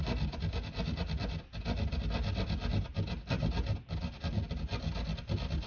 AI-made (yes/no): no